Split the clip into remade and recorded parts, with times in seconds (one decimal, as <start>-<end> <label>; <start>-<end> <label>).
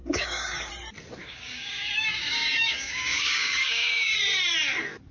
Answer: 0.0-0.7 remade; 0.7-1.2 recorded; 1.2-4.1 remade; 4.1-5.1 recorded